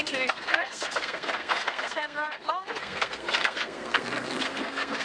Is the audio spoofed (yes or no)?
yes